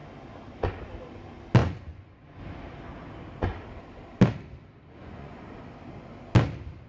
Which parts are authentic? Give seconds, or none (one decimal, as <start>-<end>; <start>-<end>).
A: 0.0-1.6; 2.4-5.0; 5.5-6.9